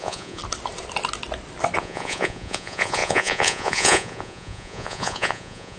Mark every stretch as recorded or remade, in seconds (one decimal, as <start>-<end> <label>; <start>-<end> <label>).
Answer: 0.0-0.4 remade; 0.4-1.8 recorded; 1.8-5.8 remade